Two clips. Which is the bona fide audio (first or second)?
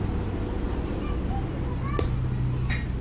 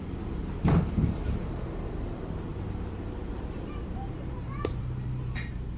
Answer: first